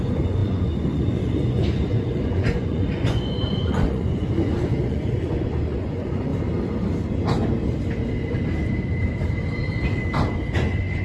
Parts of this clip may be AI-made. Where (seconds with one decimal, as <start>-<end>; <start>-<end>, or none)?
0.0-6.3; 10.5-11.0